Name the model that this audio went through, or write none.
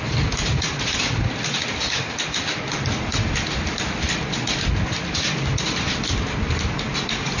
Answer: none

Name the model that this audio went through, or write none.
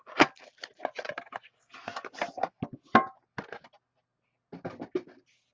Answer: none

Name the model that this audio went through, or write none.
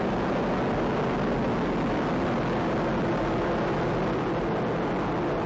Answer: none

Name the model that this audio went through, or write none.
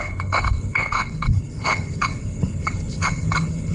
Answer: codec, HILCodec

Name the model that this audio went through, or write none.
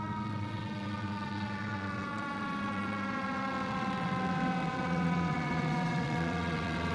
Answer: vocoder, WaveNeXt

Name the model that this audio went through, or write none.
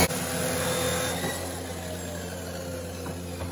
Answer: none